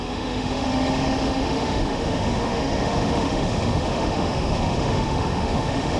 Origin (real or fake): fake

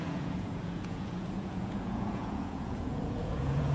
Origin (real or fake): fake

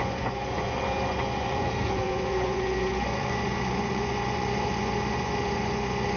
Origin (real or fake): fake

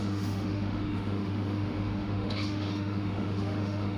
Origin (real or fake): fake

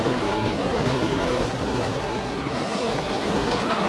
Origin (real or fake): fake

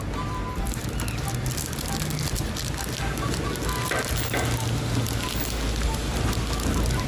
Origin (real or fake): real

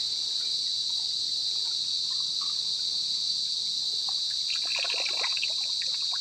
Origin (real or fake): real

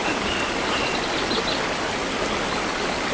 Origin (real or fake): real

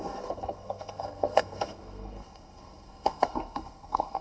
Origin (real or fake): fake